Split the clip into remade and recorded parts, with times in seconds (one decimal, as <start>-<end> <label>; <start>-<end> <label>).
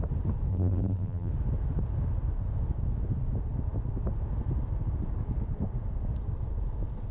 0.0-0.5 recorded; 0.5-1.3 remade; 1.3-7.1 recorded